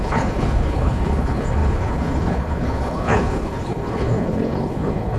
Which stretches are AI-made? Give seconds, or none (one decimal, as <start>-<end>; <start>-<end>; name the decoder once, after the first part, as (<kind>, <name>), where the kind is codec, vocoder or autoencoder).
0.0-5.2 (codec, HILCodec)